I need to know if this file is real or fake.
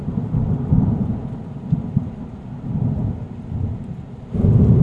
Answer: real